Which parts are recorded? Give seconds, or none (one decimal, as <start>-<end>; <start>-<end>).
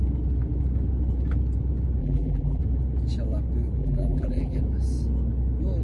0.0-2.0; 2.6-3.8; 4.6-5.8